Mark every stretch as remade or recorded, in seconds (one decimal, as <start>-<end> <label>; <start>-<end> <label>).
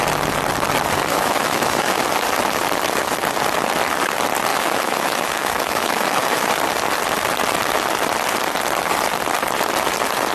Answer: 0.0-1.1 recorded; 1.1-2.0 remade; 2.0-4.5 recorded; 4.5-6.5 remade; 6.5-10.3 recorded